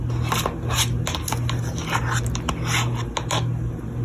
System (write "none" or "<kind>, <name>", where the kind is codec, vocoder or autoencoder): none